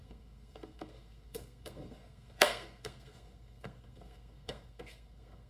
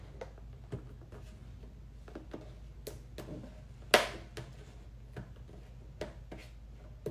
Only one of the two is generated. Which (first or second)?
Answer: first